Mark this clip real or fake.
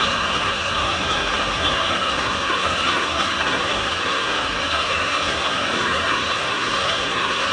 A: fake